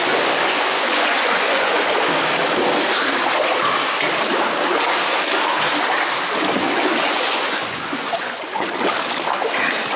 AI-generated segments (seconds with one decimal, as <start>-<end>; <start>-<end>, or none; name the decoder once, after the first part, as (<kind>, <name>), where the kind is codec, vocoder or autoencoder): 0.0-1.8 (vocoder, Vocos); 6.6-8.7